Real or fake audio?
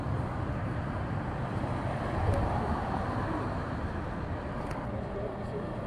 fake